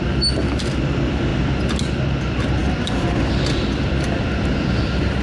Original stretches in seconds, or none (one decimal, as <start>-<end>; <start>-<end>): 0.0-5.2